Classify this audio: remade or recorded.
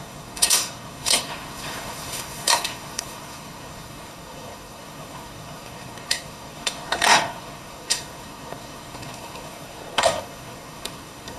remade